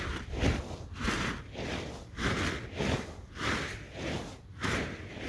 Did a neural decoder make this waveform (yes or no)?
no